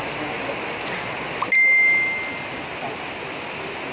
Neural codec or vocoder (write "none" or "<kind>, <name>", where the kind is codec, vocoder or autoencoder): none